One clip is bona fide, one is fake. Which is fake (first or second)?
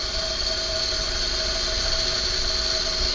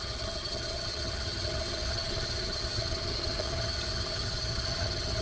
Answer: second